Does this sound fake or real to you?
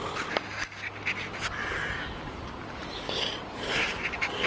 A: real